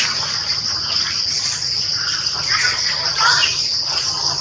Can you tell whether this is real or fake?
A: real